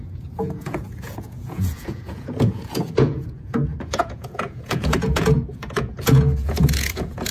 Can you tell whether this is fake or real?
fake